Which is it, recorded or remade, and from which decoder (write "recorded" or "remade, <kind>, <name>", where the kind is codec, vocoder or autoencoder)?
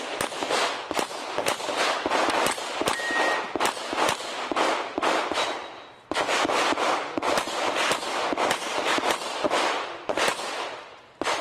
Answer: recorded